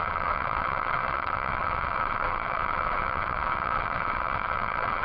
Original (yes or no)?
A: no